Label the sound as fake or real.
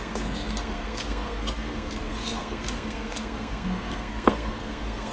fake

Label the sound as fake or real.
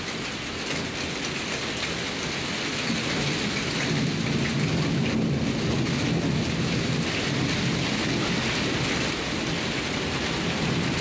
real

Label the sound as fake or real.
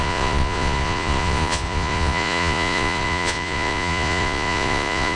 fake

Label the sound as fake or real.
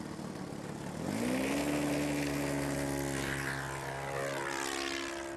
real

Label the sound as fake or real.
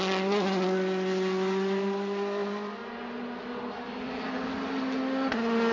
real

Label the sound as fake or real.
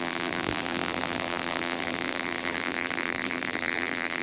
fake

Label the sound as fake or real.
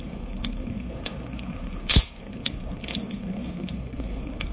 fake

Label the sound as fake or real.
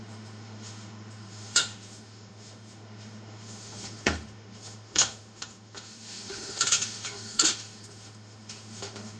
fake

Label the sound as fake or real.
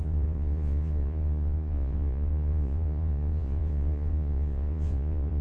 fake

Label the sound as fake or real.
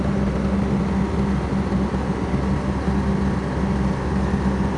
real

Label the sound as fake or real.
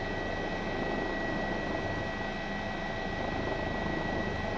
real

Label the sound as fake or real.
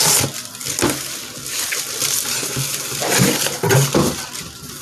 real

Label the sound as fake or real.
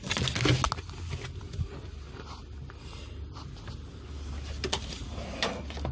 real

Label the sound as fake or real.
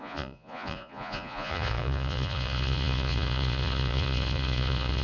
fake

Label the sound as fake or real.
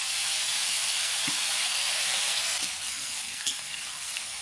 fake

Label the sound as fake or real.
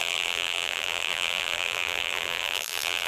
fake